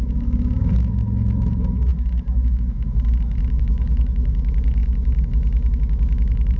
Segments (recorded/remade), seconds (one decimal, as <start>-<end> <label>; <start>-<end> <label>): 0.0-4.8 remade; 4.8-5.7 recorded; 5.7-6.6 remade